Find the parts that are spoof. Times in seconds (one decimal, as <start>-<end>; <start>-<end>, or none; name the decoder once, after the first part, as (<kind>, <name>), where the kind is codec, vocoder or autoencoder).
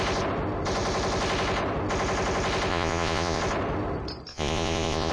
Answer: 2.7-3.4 (vocoder, Vocos); 4.3-5.1